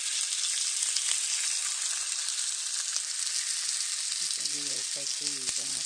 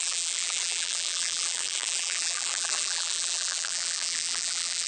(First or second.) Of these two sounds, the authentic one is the first